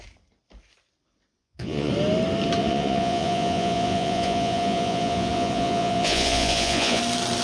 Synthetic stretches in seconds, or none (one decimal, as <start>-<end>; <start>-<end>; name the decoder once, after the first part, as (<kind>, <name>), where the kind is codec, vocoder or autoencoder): 1.4-1.9 (vocoder, Vocos); 2.6-7.0